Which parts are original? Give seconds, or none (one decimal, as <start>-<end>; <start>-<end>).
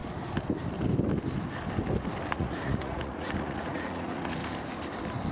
0.0-2.3; 4.4-5.3